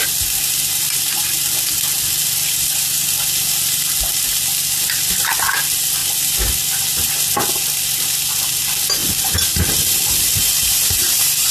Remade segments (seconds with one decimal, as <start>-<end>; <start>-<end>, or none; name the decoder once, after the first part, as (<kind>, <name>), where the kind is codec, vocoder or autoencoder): none